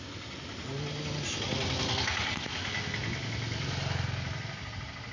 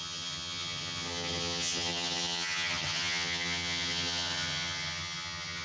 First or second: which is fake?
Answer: second